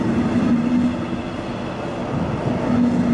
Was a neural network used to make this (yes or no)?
no